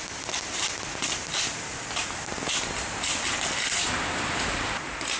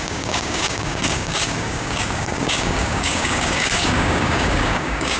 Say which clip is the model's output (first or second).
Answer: second